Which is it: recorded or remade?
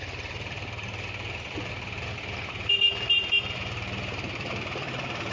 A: remade